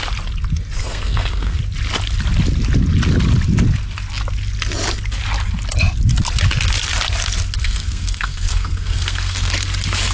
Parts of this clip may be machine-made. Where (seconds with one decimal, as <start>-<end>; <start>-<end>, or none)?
0.8-1.6; 7.6-9.5